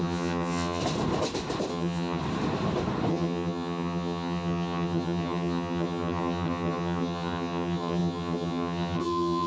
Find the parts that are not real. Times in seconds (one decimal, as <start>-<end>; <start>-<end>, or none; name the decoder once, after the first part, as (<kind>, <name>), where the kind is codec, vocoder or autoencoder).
0.0-0.8 (vocoder, HiFi-GAN); 1.7-2.2; 3.1-9.5